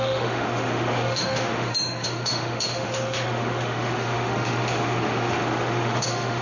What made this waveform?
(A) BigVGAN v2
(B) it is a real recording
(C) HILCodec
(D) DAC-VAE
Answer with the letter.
D